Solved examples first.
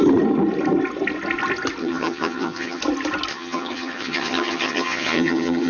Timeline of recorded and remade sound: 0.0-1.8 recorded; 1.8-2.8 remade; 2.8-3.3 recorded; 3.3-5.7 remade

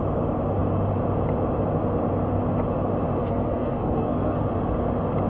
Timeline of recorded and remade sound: 0.0-3.2 recorded; 3.2-4.4 remade; 4.4-5.3 recorded

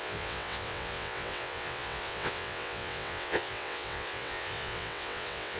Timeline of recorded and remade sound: 0.0-5.6 remade

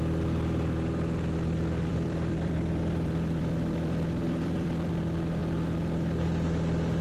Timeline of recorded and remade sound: 0.0-1.9 recorded; 1.9-4.9 remade; 4.9-7.0 recorded

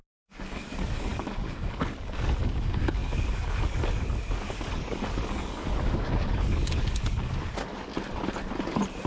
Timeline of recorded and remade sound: 0.0-7.9 remade; 7.9-9.1 recorded

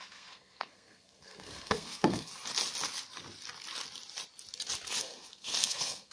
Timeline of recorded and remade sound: 0.0-2.3 remade; 2.3-5.0 recorded; 5.0-6.1 remade

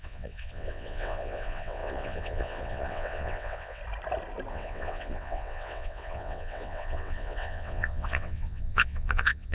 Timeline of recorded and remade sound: 0.0-3.8 remade; 3.8-4.5 recorded; 4.5-9.5 remade